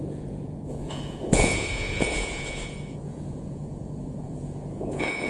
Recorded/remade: remade